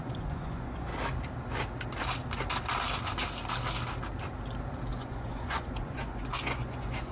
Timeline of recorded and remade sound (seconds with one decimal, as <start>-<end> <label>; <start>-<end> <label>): 0.0-0.9 remade; 0.9-4.9 recorded; 4.9-7.1 remade